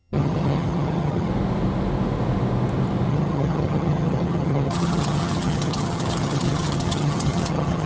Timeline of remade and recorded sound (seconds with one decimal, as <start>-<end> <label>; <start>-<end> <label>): 0.0-1.3 remade; 1.3-3.1 recorded; 3.1-7.9 remade